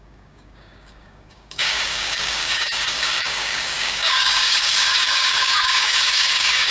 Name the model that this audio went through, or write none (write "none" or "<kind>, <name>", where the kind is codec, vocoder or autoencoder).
codec, DAC